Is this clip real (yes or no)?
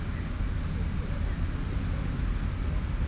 yes